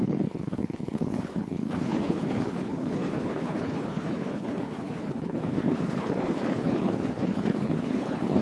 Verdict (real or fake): fake